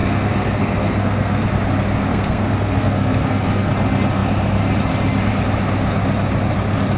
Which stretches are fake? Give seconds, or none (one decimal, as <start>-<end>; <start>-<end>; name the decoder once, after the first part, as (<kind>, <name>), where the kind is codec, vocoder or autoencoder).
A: 0.0-1.5 (codec, SNAC); 2.1-3.7